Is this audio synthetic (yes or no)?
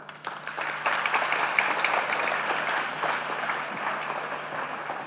no